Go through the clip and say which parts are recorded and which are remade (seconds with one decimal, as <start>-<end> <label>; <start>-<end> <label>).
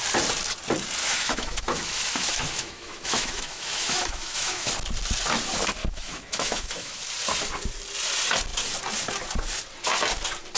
0.0-1.0 recorded; 1.0-4.7 remade; 4.7-5.8 recorded; 5.8-7.0 remade; 7.0-10.6 recorded